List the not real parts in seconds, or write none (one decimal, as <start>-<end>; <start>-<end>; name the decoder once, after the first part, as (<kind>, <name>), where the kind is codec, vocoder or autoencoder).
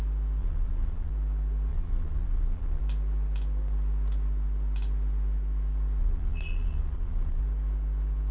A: 0.4-1.1 (vocoder, Vocos); 1.7-2.8; 6.0-7.4